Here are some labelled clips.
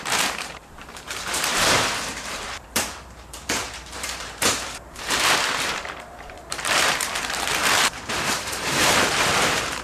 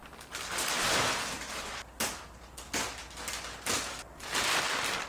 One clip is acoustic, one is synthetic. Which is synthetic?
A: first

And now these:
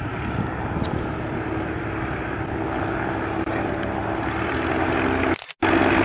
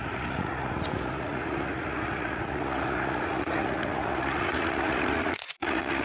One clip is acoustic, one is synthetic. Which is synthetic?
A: second